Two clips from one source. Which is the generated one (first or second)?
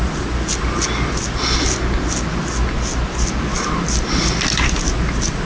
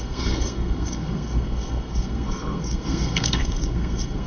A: second